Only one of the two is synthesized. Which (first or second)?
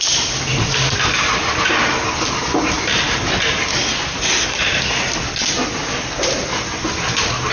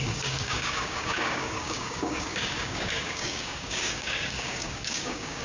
second